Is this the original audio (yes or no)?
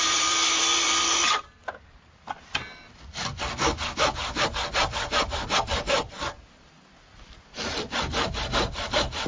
no